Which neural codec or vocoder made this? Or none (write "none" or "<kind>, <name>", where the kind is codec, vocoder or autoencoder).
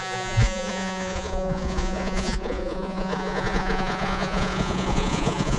vocoder, Vocos